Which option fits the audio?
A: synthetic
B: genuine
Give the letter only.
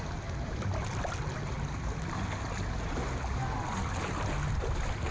B